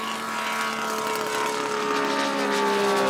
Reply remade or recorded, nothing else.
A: recorded